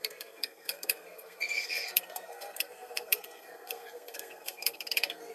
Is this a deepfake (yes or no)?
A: yes